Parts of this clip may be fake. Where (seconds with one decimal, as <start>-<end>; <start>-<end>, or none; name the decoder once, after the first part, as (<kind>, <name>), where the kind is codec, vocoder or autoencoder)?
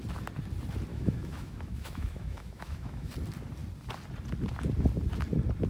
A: 0.9-3.1 (autoencoder, DAC-VAE)